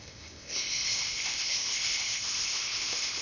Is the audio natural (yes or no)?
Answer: no